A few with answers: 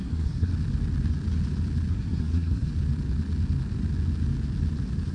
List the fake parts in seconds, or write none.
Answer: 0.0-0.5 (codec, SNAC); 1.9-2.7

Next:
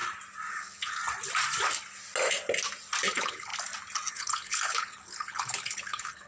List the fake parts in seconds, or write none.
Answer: 0.5-1.0 (codec, HILCodec); 3.1-3.5; 4.1-6.3

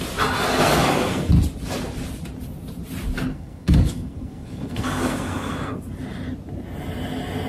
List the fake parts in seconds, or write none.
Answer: 0.6-1.3 (codec, SNAC); 3.3-5.8

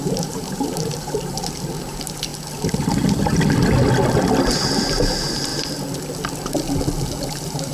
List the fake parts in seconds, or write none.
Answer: 0.0-2.3 (vocoder, BigVGAN v2); 4.7-5.5; 7.3-7.7

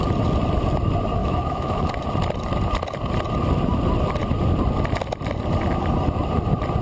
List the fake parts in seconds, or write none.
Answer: 1.2-1.9 (autoencoder, DAC-VAE)